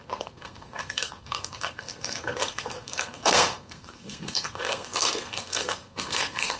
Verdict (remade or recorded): remade